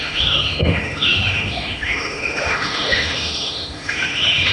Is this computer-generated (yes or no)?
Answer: yes